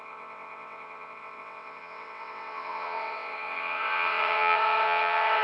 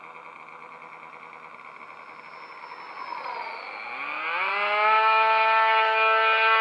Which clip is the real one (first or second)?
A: second